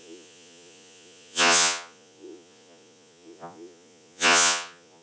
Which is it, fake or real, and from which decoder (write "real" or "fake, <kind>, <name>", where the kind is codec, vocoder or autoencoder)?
fake, vocoder, Vocos